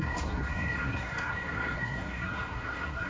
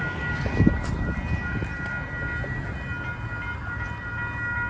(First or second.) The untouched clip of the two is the second